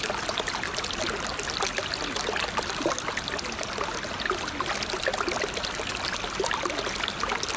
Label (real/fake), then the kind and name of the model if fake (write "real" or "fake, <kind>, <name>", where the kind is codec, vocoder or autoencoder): real